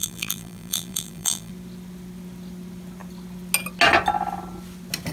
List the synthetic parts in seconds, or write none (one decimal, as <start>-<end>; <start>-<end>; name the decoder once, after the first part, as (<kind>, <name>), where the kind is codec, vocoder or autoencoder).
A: 0.0-1.5 (vocoder, BigVGAN v2)